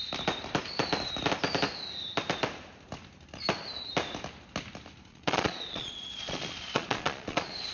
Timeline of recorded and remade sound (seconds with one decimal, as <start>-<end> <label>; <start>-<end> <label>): 0.0-5.1 recorded; 5.1-7.7 remade